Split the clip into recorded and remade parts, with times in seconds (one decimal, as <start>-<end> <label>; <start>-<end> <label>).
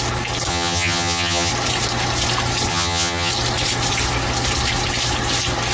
0.0-0.5 recorded; 0.5-1.5 remade; 1.5-2.7 recorded; 2.7-3.3 remade; 3.3-5.7 recorded